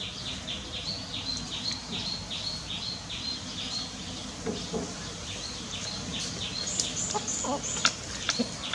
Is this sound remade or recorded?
recorded